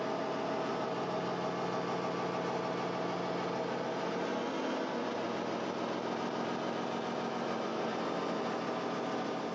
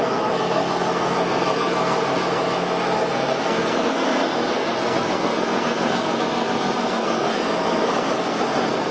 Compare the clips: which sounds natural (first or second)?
first